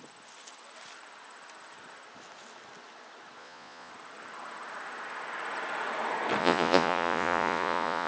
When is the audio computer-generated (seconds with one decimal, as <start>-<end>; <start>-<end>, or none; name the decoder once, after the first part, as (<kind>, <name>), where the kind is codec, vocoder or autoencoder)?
3.4-3.9 (vocoder, Vocos); 6.4-8.1